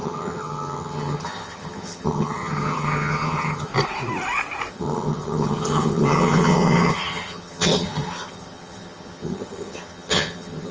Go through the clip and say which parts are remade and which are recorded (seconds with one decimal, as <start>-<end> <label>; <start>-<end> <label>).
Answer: 0.0-3.7 remade; 3.7-4.7 recorded; 4.7-10.7 remade